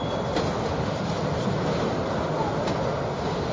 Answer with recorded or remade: recorded